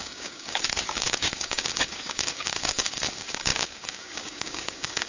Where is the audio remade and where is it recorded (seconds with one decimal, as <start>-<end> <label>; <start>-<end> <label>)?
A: 0.0-5.1 remade